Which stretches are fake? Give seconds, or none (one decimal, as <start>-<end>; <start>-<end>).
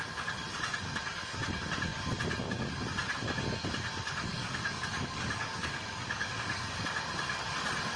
4.3-6.8